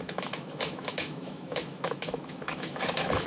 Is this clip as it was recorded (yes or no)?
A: no